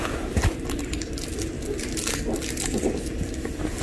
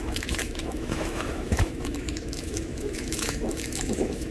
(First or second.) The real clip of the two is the first